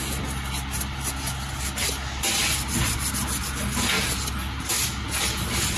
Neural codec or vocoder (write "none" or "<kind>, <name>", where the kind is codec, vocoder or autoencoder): none